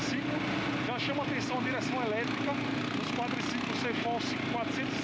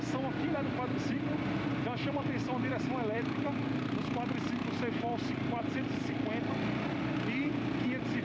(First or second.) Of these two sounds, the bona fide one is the first